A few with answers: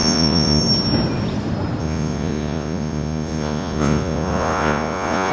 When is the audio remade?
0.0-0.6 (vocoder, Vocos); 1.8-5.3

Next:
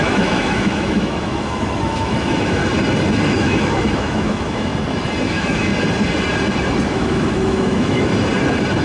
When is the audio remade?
0.0-2.6 (autoencoder, DAC-VAE); 3.2-4.7; 5.3-5.7; 6.9-8.1

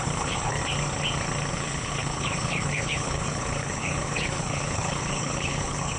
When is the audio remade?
0.0-0.6 (codec, HILCodec); 1.5-6.0

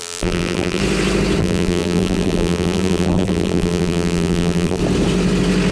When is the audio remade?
0.0-0.8 (vocoder, BigVGAN v2); 1.4-4.8